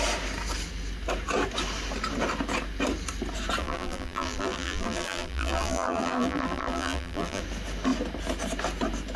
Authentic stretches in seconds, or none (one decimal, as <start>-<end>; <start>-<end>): 0.0-3.6; 7.4-9.2